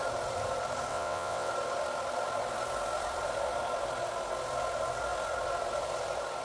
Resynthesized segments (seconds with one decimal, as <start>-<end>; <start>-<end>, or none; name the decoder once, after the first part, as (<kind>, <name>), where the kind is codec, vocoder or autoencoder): 0.9-1.5 (vocoder, WaveNeXt)